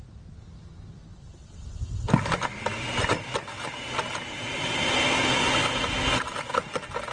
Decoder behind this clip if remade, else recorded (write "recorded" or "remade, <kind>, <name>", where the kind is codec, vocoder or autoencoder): recorded